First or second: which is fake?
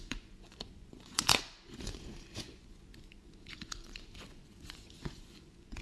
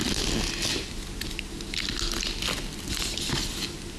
first